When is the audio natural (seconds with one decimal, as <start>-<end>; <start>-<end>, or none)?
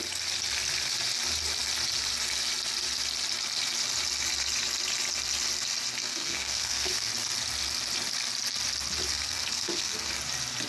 0.0-6.0; 7.1-9.1; 10.1-10.7